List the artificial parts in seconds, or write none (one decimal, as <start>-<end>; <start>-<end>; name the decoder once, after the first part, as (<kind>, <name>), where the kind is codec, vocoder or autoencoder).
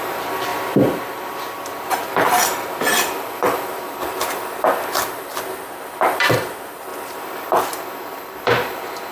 0.0-6.9 (vocoder, BigVGAN v2); 7.6-9.1